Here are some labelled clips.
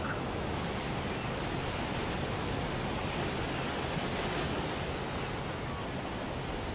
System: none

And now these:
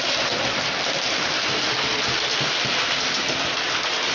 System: none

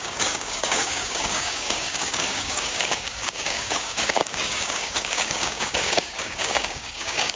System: codec, DAC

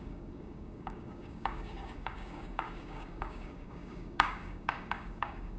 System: codec, DAC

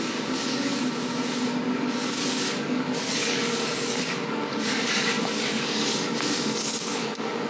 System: codec, DAC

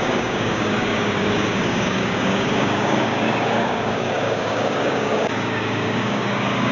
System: codec, DAC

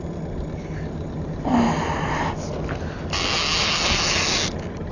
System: none